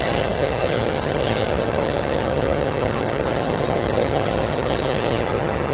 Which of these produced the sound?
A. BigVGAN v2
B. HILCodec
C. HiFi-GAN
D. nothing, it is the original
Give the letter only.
C